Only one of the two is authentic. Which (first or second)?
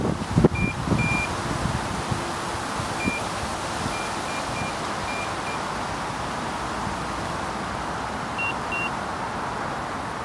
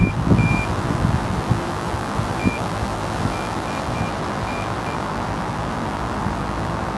first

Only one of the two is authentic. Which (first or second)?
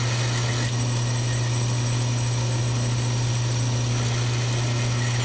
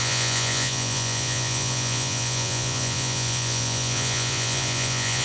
first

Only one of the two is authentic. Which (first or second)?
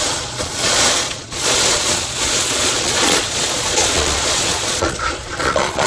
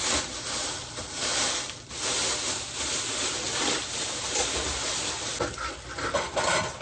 second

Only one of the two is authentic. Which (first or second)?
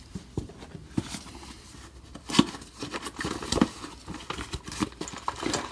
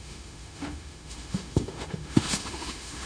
first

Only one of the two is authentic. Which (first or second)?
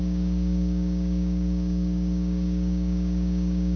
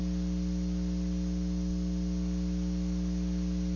second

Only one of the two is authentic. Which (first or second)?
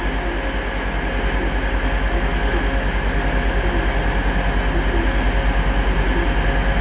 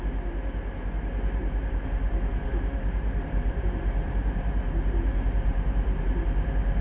first